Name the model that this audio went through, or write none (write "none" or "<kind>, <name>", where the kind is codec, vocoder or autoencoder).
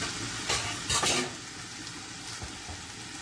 none